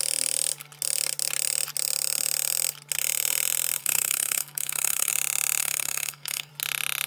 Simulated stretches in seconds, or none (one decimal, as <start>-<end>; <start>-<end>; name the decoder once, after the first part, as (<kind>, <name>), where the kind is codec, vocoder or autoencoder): 3.8-5.1 (codec, SNAC); 5.6-6.5